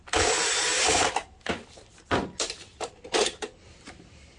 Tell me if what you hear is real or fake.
real